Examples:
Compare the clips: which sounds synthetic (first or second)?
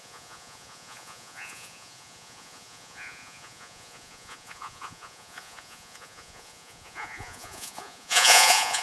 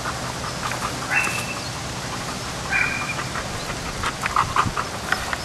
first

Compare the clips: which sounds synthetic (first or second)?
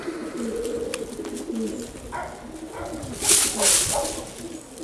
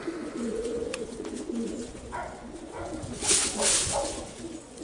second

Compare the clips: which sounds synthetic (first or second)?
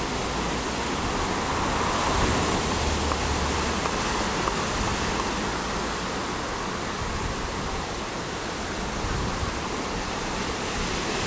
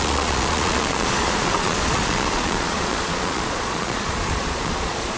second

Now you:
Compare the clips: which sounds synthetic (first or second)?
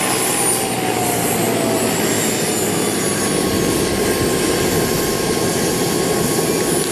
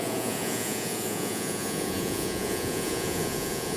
second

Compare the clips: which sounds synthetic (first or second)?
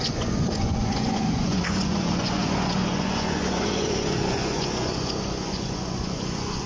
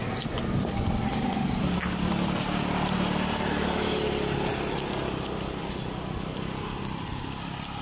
first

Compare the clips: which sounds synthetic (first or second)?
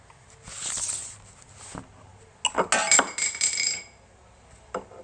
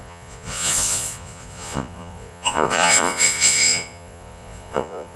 second